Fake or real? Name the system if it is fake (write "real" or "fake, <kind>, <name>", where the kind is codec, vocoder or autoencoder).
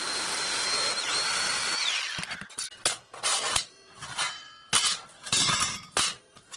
real